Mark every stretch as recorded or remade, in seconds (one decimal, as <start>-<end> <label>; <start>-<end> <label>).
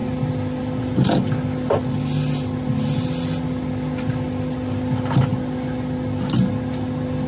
0.0-7.3 recorded